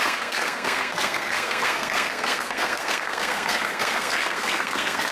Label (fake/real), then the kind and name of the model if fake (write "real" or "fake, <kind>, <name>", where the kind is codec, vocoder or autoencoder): fake, codec, SNAC